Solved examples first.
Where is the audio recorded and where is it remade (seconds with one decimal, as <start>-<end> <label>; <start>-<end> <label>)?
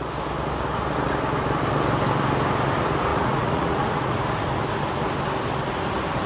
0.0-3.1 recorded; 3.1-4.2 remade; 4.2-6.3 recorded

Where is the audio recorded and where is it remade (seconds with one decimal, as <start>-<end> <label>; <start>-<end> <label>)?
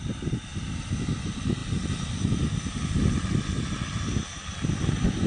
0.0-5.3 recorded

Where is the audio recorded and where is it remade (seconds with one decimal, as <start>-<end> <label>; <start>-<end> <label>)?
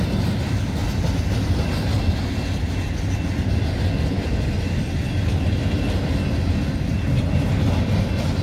0.0-8.4 recorded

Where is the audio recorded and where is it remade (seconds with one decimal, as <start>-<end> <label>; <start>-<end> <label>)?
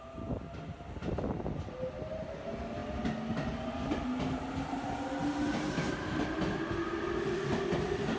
0.0-8.2 recorded